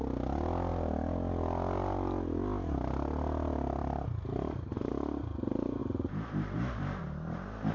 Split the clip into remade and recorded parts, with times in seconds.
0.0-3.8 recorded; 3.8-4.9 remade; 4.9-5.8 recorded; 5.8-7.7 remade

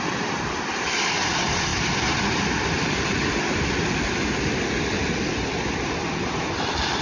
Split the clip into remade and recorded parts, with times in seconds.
0.0-7.0 remade